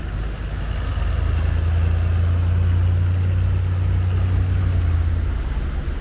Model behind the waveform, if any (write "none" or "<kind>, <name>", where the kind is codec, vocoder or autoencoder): none